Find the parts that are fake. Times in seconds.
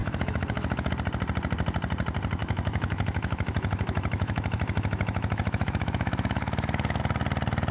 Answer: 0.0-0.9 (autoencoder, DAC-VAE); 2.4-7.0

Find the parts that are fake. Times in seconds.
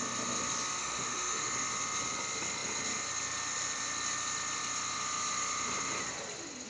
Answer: 0.8-1.5 (autoencoder, DAC-VAE)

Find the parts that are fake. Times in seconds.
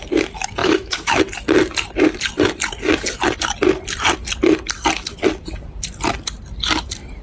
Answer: 0.6-1.2 (autoencoder, DAC-VAE)